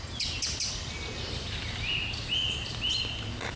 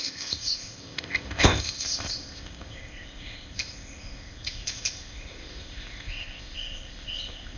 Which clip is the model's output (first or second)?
second